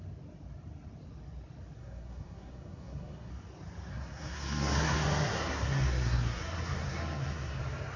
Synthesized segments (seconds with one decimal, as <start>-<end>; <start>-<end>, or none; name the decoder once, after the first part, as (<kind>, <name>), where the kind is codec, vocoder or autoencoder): 1.8-3.3 (codec, SNAC); 3.9-7.6